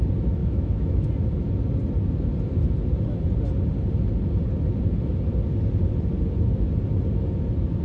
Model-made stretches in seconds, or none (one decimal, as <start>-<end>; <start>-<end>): 0.4-1.1